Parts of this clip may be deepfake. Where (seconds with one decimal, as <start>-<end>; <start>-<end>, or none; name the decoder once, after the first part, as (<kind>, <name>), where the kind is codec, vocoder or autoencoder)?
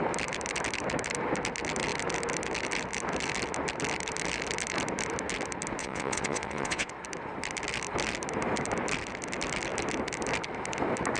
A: 5.8-6.9 (vocoder, WaveNeXt)